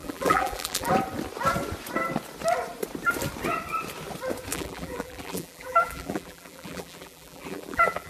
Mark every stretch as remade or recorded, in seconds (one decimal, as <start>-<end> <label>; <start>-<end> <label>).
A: 0.0-0.9 remade; 0.9-4.5 recorded; 4.5-8.1 remade